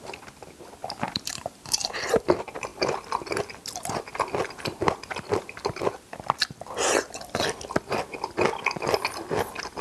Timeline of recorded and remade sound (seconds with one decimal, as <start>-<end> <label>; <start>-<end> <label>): 0.0-0.8 recorded; 0.8-2.1 remade; 2.1-9.8 recorded